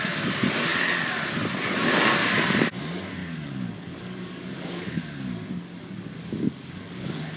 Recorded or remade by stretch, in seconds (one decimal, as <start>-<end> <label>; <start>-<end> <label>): 0.0-3.2 recorded; 3.2-7.4 remade